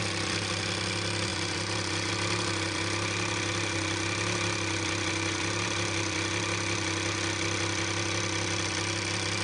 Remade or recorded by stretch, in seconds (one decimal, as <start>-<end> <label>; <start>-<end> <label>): 0.0-1.3 recorded; 1.3-2.1 remade; 2.1-9.4 recorded